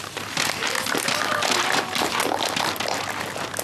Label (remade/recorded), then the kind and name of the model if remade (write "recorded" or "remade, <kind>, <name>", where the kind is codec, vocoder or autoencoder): recorded